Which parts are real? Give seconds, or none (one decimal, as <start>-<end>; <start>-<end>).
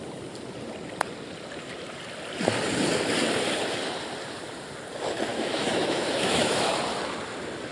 0.0-5.3; 6.7-7.7